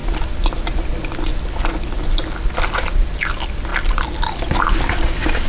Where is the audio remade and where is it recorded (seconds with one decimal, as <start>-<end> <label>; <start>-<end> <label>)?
0.0-5.5 recorded